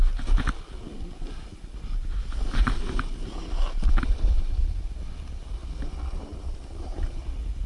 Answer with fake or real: real